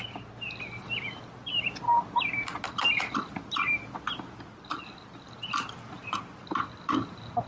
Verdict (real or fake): real